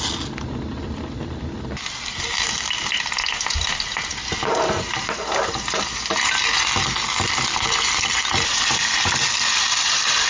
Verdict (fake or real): real